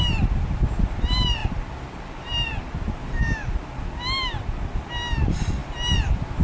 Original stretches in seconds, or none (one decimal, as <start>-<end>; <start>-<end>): 0.0-6.4